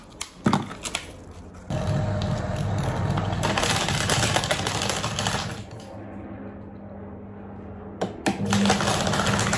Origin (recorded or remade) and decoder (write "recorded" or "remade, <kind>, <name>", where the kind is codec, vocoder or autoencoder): recorded